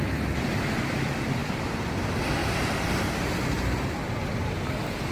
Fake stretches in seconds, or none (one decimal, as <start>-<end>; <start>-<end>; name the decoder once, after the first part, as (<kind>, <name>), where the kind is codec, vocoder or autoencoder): 1.4-1.9 (vocoder, BigVGAN v2); 2.4-4.0